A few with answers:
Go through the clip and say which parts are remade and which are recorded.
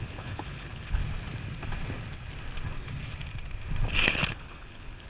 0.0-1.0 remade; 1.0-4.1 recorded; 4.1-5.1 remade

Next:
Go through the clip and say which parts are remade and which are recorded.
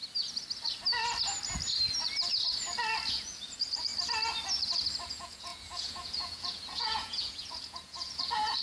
0.0-3.1 recorded; 3.1-3.9 remade; 3.9-5.1 recorded; 5.1-8.6 remade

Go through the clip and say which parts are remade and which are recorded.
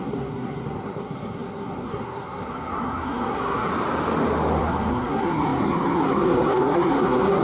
0.0-3.7 remade; 3.7-4.6 recorded; 4.6-7.4 remade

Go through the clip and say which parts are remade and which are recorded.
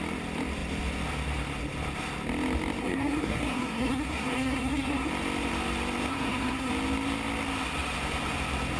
0.0-2.8 recorded; 2.8-5.1 remade; 5.1-6.1 recorded; 6.1-6.7 remade; 6.7-8.8 recorded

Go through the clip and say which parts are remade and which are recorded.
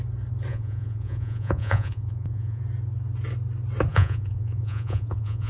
0.0-0.5 recorded; 0.5-2.6 remade; 2.6-3.9 recorded; 3.9-5.5 remade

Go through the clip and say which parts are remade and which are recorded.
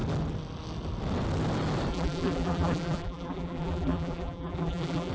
0.0-1.9 recorded; 1.9-5.1 remade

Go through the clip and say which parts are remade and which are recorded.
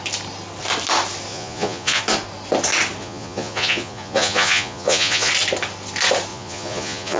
0.0-1.3 recorded; 1.3-2.0 remade; 2.0-3.0 recorded; 3.0-5.3 remade; 5.3-6.3 recorded; 6.3-7.2 remade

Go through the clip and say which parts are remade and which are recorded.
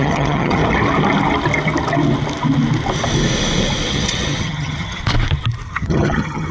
0.0-0.6 remade; 0.6-3.9 recorded; 3.9-5.0 remade; 5.0-5.7 recorded; 5.7-6.5 remade